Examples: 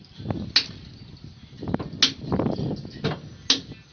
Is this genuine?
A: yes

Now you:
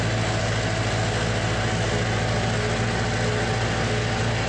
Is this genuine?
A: yes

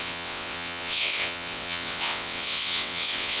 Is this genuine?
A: no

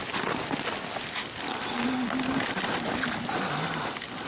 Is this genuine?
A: yes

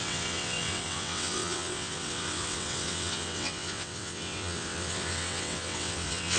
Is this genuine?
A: no